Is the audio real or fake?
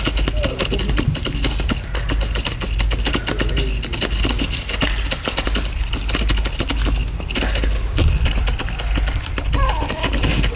real